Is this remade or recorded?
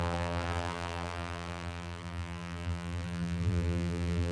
remade